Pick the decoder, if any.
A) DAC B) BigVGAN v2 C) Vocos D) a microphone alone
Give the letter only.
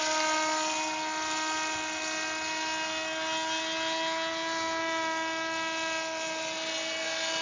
D